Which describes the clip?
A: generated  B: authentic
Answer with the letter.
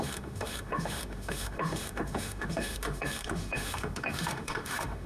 A